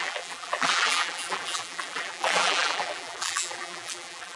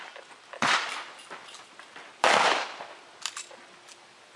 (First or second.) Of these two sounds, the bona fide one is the second